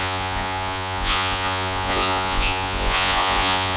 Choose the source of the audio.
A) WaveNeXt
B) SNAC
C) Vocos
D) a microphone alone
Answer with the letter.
C